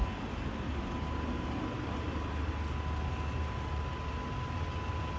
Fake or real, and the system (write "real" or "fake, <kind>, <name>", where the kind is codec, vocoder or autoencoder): real